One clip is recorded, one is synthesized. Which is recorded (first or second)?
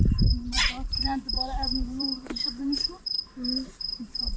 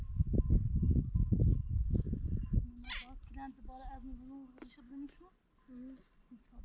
second